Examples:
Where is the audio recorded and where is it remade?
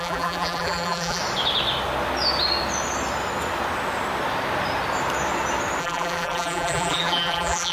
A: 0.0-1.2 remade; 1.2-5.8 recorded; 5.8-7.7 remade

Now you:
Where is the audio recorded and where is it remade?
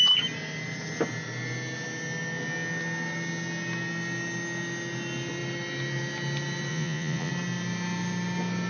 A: 0.0-6.7 recorded; 6.7-7.3 remade; 7.3-8.7 recorded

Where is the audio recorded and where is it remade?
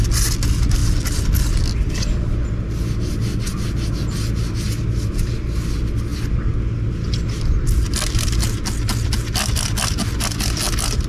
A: 0.0-11.1 recorded